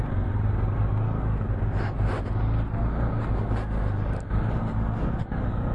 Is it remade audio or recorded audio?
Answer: recorded